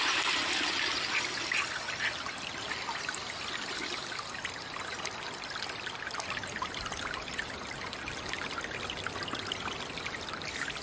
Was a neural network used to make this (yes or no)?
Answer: no